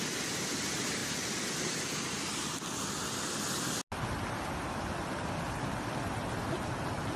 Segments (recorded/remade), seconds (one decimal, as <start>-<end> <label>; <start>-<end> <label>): 0.0-7.2 recorded

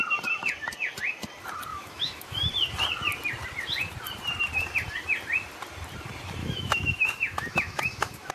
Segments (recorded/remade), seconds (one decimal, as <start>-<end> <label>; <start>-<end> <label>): 0.0-1.7 recorded; 1.7-2.5 remade; 2.5-6.4 recorded; 6.4-8.3 remade

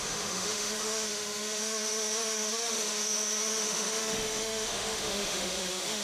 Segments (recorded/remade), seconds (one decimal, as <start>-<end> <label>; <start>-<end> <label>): 0.0-6.0 remade